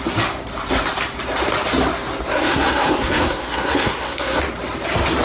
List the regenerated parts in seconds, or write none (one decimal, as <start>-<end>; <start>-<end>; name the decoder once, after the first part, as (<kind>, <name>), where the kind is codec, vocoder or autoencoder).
2.3-4.4 (codec, SNAC)